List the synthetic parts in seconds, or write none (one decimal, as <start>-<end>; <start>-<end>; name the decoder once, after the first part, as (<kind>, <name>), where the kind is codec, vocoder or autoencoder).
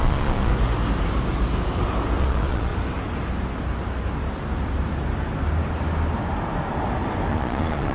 0.0-0.5 (vocoder, Vocos); 2.2-2.7; 7.3-7.9